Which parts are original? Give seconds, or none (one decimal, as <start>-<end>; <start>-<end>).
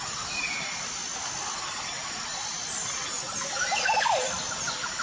0.0-5.0